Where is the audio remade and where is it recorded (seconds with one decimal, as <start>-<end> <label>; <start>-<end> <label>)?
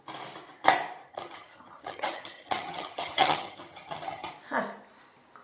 0.0-1.1 recorded; 1.1-4.3 remade; 4.3-5.4 recorded